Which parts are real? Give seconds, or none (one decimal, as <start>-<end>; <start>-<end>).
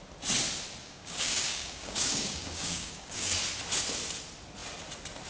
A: 0.0-0.8; 3.4-5.3